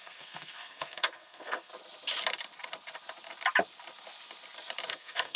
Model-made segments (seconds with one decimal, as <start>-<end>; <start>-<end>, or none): 0.0-1.7; 4.9-5.4

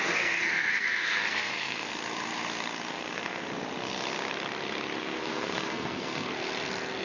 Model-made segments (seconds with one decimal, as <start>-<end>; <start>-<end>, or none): 0.0-1.9; 2.9-3.4; 5.0-6.3

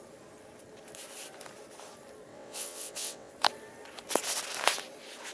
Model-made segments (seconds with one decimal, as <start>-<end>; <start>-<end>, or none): 2.3-3.3

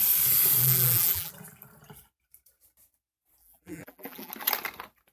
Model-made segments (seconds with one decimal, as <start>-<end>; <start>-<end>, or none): 0.6-1.3; 3.4-4.3